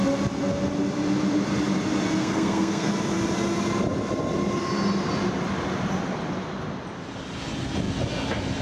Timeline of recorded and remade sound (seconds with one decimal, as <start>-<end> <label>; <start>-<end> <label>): 0.0-2.2 recorded; 2.2-2.9 remade; 2.9-8.6 recorded

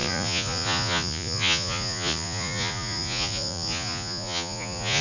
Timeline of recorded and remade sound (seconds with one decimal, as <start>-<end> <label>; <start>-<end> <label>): 0.0-5.0 remade

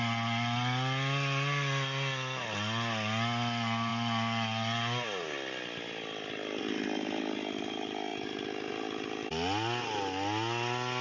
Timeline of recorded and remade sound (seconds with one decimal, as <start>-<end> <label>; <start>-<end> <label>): 0.0-11.0 recorded

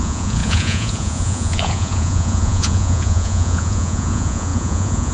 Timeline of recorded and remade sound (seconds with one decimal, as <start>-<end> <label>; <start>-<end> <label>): 0.0-5.1 remade

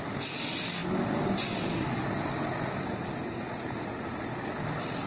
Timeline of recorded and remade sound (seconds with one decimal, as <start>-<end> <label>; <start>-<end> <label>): 0.0-5.1 recorded

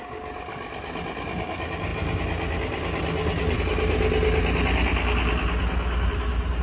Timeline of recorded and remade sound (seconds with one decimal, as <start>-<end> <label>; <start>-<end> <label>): 0.0-6.6 recorded

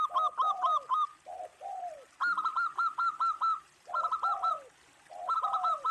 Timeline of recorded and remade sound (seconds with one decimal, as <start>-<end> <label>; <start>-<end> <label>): 0.0-1.5 recorded; 1.5-2.1 remade; 2.1-2.5 recorded; 2.5-4.5 remade; 4.5-5.9 recorded